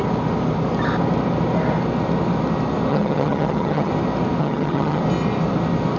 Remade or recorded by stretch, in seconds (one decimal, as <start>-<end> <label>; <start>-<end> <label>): 0.0-2.9 recorded; 2.9-3.9 remade; 3.9-4.4 recorded; 4.4-5.0 remade; 5.0-6.0 recorded